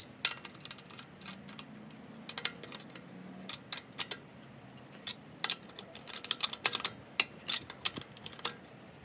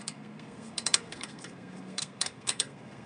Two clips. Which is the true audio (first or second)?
first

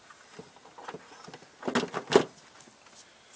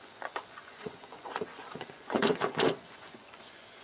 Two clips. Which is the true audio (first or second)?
first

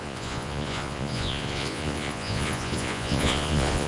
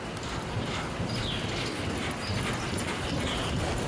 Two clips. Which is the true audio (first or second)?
second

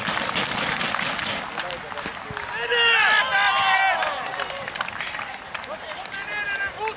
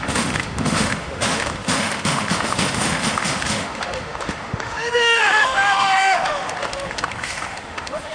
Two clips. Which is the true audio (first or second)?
first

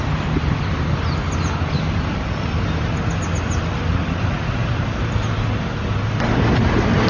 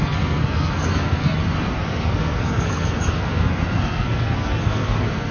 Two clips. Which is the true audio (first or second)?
first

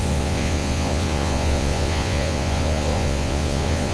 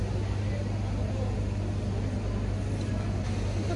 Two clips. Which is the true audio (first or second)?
second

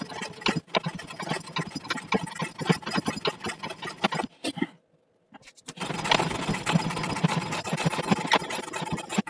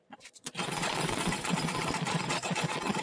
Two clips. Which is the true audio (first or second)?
first